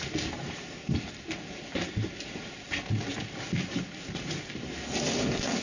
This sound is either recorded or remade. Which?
recorded